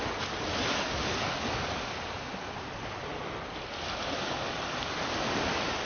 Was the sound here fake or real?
real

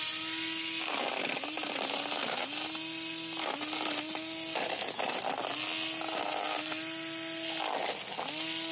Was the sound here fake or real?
real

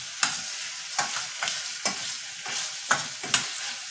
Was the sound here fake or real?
real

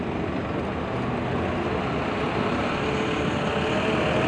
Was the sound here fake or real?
real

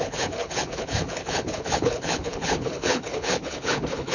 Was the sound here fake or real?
fake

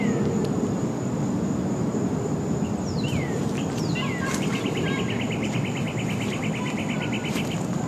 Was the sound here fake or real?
real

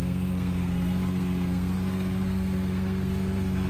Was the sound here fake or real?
fake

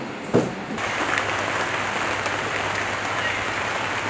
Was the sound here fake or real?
real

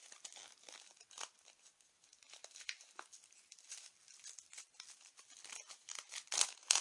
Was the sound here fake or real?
real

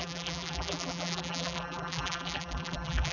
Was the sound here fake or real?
fake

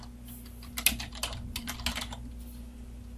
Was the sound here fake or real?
real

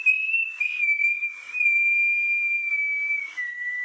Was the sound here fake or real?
real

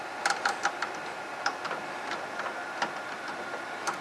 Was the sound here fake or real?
real